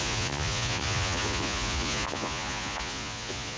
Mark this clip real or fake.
fake